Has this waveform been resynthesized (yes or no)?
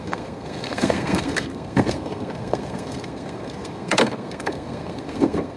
yes